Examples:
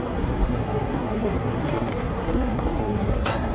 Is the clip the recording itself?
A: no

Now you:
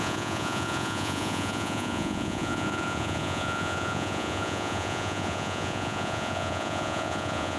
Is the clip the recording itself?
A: no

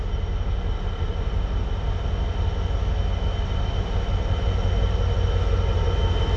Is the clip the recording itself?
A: yes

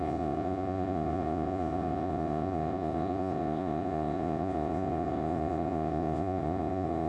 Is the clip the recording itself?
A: no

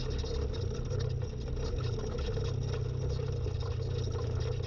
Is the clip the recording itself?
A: yes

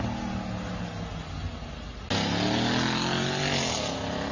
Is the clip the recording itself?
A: yes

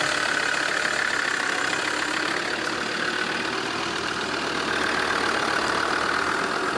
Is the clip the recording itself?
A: yes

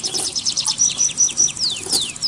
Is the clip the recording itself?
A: yes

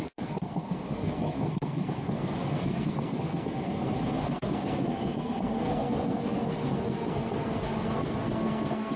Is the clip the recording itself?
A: no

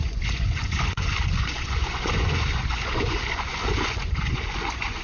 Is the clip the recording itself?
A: no